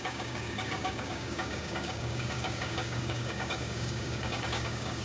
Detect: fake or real fake